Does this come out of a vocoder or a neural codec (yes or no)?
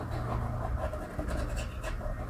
no